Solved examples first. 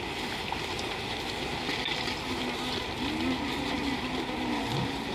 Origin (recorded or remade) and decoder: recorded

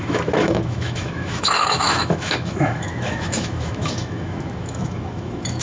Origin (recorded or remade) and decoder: remade, autoencoder, DAC-VAE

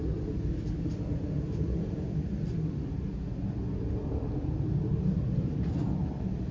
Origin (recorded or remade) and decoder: recorded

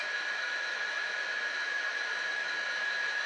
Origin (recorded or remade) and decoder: remade, autoencoder, DAC-VAE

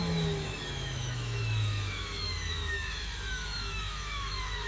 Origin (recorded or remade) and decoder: remade, autoencoder, DAC-VAE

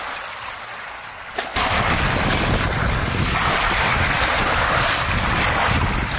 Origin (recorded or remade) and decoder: recorded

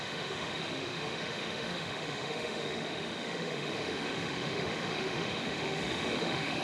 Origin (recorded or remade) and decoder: remade, autoencoder, DAC-VAE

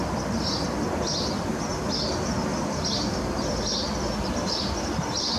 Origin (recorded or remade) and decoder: recorded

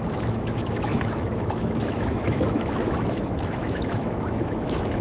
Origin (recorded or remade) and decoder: remade, autoencoder, DAC-VAE